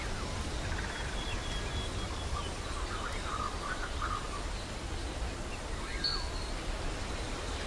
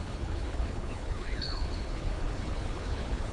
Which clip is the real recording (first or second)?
first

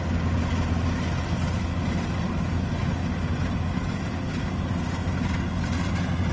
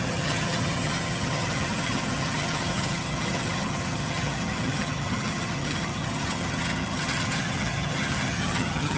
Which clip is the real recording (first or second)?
first